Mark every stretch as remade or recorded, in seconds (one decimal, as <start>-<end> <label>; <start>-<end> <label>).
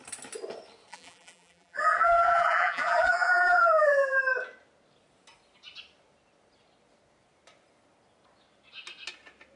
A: 0.0-0.9 recorded; 0.9-4.2 remade; 4.2-9.6 recorded